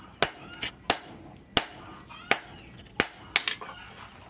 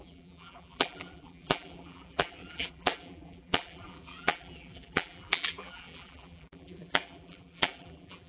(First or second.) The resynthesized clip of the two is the second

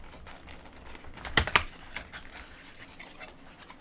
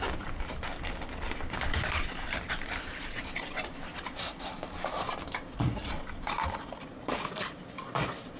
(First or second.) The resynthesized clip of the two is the second